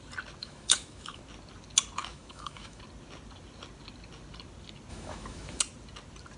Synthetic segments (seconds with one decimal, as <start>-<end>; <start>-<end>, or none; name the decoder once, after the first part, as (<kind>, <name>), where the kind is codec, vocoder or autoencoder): 0.4-1.2 (autoencoder, DAC-VAE); 2.0-2.8; 4.9-5.6